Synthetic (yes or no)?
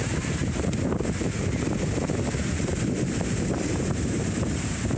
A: yes